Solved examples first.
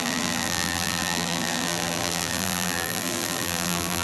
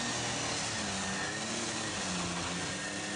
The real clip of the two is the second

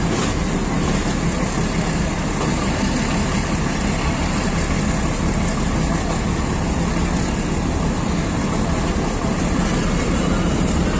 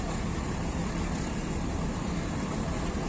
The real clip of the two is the first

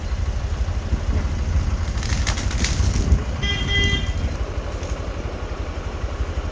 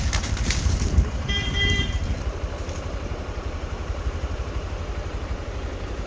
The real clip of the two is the first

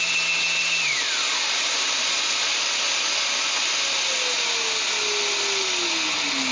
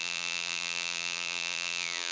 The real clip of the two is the first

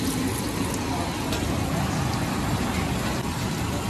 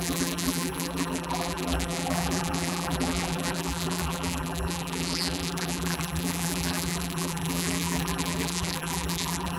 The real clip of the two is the first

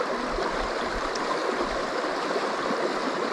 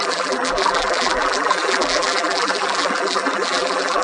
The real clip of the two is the first